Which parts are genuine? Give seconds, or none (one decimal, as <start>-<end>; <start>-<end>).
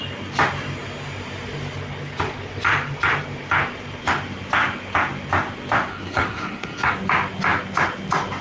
0.0-5.9; 6.9-8.4